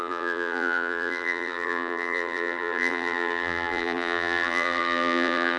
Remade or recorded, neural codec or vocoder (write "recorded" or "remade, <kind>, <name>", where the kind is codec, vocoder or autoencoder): remade, vocoder, BigVGAN v2